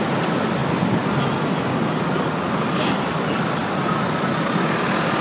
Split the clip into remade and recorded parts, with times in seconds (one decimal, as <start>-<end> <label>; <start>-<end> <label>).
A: 0.0-5.2 recorded